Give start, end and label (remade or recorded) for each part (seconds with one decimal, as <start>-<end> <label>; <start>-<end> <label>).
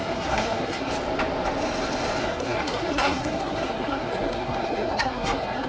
0.0-0.9 remade; 0.9-2.2 recorded; 2.2-5.7 remade